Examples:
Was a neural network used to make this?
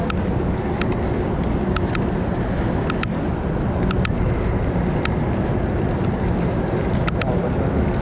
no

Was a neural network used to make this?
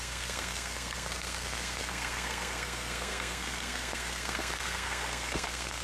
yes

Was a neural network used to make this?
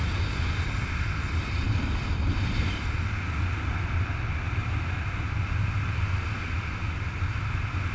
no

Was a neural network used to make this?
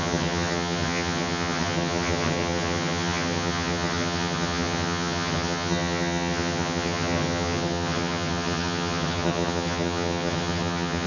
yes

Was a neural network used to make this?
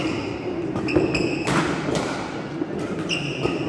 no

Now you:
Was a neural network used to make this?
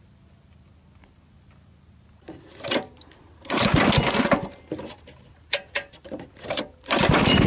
no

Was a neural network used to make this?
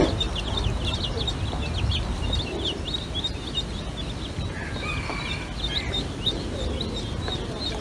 no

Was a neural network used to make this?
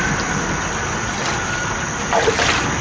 no